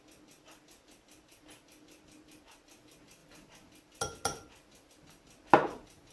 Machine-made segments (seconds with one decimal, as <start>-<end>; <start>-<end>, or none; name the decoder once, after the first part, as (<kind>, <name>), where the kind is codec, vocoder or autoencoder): none